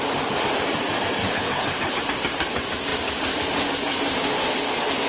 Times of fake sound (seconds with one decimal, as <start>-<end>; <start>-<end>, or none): 1.2-2.0

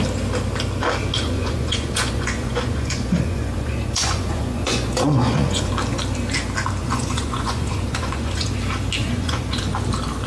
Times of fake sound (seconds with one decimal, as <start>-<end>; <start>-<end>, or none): 1.2-5.7; 6.8-8.5; 9.0-9.6

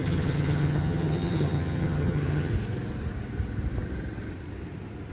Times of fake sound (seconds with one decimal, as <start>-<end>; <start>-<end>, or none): 0.0-2.5

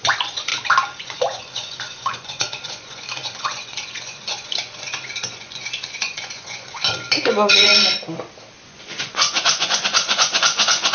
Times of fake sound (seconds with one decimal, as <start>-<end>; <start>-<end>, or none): 0.0-0.5; 1.0-7.7; 8.6-10.9

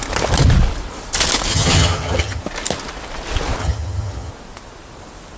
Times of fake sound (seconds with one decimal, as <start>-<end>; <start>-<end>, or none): 1.5-2.4; 3.6-4.3

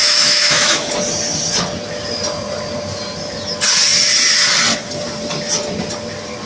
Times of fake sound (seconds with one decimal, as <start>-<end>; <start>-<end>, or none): 0.0-0.9

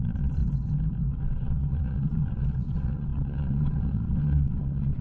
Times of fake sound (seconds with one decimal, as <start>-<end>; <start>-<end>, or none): 0.0-0.4; 1.2-5.0